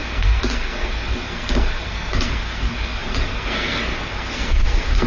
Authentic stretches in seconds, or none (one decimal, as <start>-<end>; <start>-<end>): none